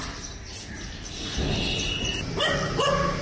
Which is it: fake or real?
real